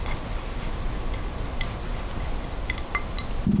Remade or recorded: recorded